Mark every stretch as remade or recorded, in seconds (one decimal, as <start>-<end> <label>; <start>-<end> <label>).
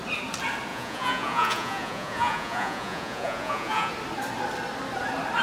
0.0-0.7 recorded; 0.7-3.9 remade; 3.9-5.4 recorded